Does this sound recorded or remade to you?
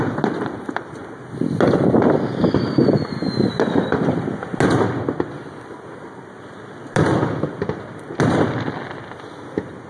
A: recorded